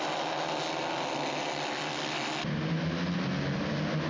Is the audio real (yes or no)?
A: yes